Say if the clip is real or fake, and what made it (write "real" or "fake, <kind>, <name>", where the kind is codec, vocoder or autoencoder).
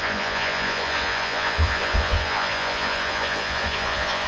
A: fake, vocoder, Vocos